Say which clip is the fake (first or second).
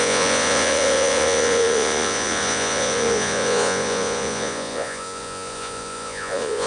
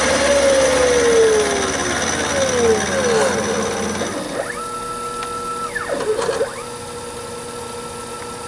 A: first